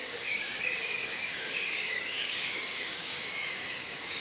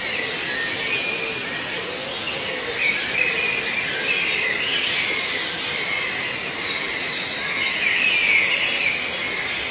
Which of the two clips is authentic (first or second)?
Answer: second